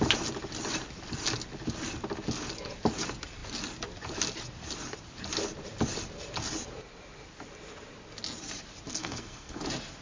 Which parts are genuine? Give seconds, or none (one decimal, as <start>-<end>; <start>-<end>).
0.0-8.9; 9.6-10.0